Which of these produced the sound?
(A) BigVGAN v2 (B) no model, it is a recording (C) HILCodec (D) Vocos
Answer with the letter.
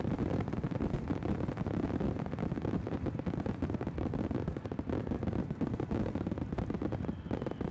B